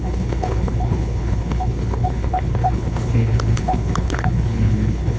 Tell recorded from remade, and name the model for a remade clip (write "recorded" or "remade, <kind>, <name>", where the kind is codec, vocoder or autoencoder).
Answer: remade, codec, HILCodec